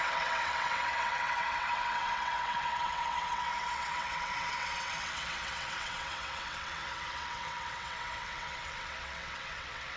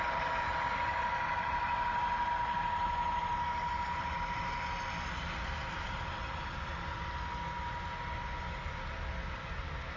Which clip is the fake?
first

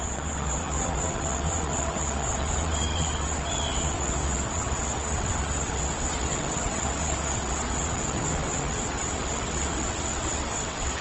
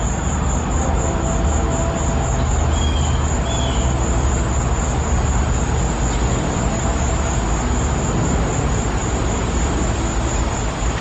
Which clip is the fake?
first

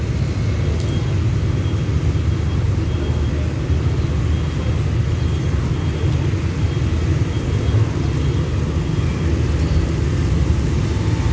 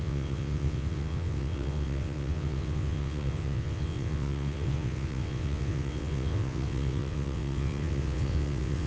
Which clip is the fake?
second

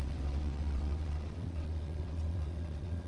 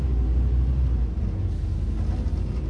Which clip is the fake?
first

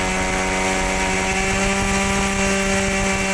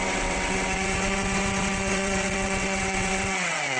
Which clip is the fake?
second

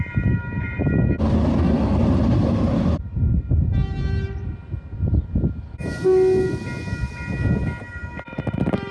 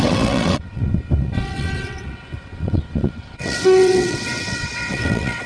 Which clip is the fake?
second